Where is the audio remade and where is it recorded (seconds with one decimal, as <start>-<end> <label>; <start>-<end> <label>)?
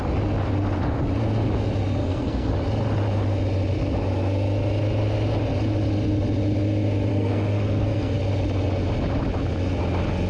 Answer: 0.0-2.0 recorded; 2.0-2.5 remade; 2.5-7.1 recorded; 7.1-8.2 remade; 8.2-10.3 recorded